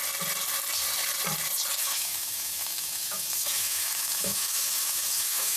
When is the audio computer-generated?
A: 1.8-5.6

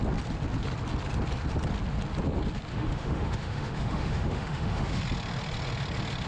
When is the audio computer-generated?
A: 2.7-5.0

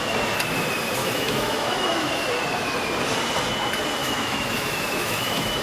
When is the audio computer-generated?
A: 1.0-2.1; 4.0-5.6

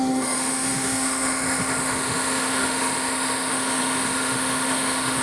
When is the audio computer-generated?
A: 0.0-5.2

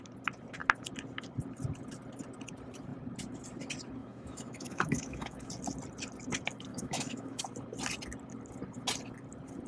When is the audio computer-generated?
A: 4.0-5.5; 6.7-7.4

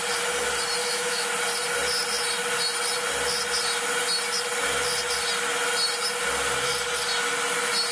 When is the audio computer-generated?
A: 0.8-1.3

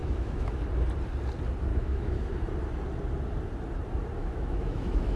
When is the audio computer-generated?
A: 0.0-0.6; 1.7-2.3; 4.2-5.2

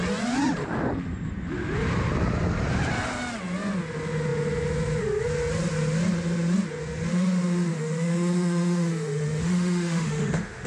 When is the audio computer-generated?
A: 7.1-10.7